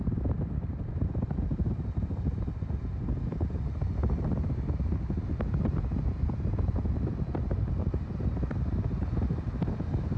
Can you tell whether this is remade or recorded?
recorded